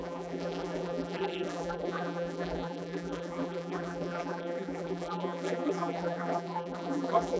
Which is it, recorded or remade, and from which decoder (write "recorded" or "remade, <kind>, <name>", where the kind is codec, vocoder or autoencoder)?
remade, vocoder, BigVGAN v2